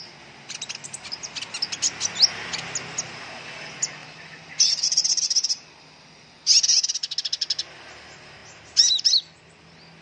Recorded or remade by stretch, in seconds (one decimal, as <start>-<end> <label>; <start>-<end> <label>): 0.0-4.0 recorded; 4.0-6.1 remade; 6.1-10.0 recorded